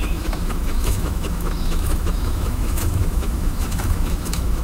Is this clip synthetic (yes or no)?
yes